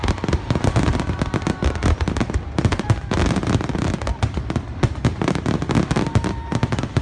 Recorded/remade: recorded